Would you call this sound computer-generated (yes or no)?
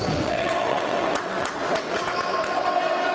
yes